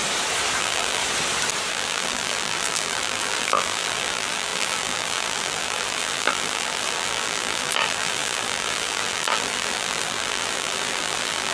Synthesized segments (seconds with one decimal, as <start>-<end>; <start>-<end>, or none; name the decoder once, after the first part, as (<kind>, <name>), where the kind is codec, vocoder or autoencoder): 0.6-1.0 (vocoder, BigVGAN v2); 1.7-11.5